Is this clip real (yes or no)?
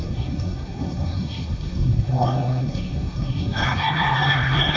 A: no